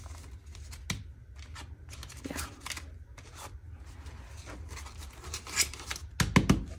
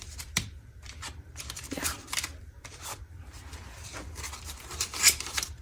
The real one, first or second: first